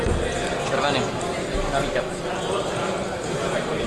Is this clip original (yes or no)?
yes